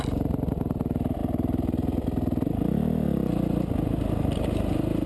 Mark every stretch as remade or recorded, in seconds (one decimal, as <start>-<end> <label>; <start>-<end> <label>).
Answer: 0.0-5.1 recorded